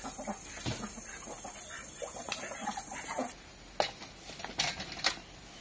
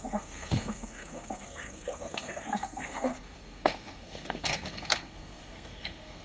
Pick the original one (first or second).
first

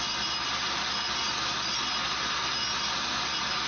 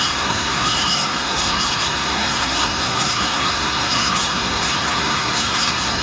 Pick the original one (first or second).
first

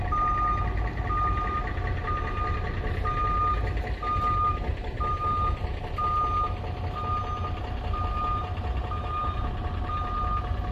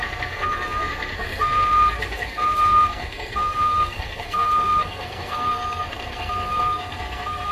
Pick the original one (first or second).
first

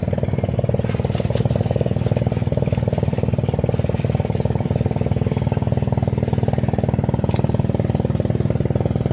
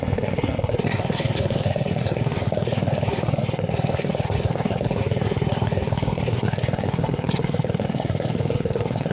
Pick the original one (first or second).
first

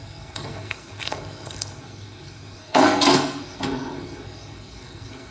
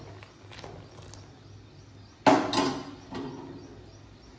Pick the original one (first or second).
second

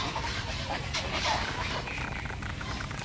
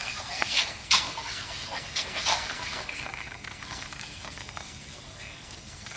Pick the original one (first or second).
first